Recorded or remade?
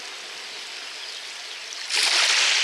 recorded